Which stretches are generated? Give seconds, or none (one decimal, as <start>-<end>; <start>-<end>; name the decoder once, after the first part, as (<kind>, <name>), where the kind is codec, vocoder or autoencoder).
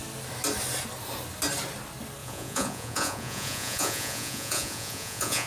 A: 2.2-5.5 (vocoder, Vocos)